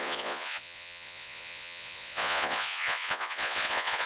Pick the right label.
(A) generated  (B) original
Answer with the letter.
A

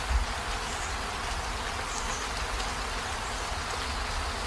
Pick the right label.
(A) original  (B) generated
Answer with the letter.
A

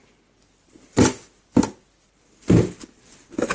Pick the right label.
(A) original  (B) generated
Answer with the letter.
A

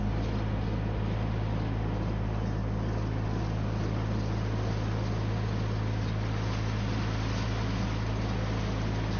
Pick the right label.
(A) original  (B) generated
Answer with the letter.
A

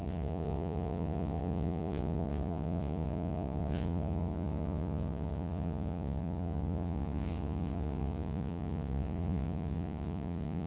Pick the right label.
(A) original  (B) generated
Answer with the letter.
B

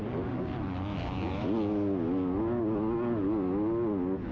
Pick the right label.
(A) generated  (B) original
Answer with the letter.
B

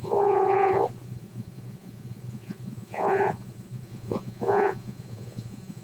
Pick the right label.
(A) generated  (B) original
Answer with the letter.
A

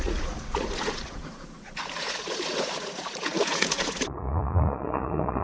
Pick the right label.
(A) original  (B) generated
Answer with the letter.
B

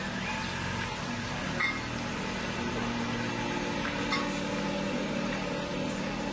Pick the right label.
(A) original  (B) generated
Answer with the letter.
A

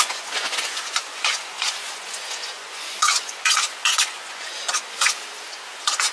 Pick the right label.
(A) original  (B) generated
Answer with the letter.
B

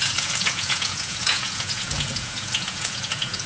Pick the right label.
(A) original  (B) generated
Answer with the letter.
B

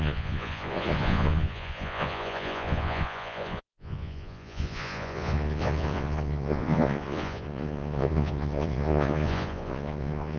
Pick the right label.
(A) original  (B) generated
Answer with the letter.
B